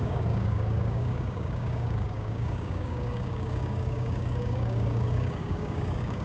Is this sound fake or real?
fake